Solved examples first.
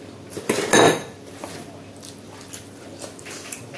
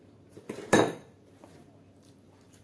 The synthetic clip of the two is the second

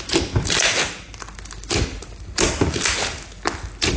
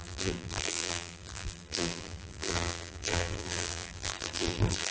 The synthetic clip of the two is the second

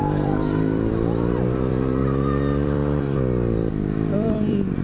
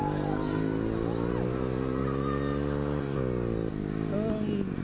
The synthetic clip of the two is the first